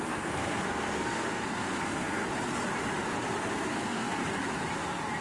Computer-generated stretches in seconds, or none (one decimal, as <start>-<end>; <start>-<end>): 0.0-2.2; 3.5-4.2